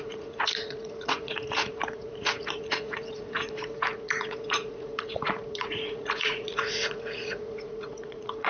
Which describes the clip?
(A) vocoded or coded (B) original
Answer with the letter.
A